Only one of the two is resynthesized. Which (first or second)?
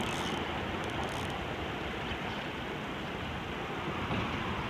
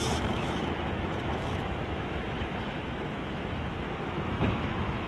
second